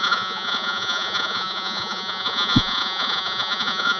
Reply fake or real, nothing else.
fake